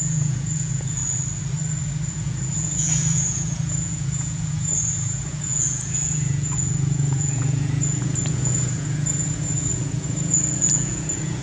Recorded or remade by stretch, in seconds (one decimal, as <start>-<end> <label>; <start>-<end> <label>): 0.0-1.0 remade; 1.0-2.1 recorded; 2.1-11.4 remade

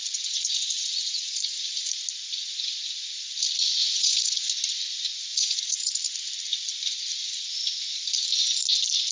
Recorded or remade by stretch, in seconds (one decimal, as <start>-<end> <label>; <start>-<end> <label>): 0.0-2.0 remade; 2.0-3.8 recorded; 3.8-4.5 remade; 4.5-5.3 recorded; 5.3-5.9 remade; 5.9-9.1 recorded

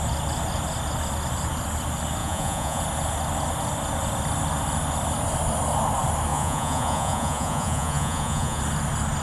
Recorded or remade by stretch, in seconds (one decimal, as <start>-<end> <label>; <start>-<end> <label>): 0.0-2.2 recorded; 2.2-2.8 remade; 2.8-6.3 recorded; 6.3-8.6 remade; 8.6-9.2 recorded